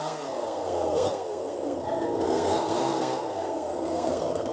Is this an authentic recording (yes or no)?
no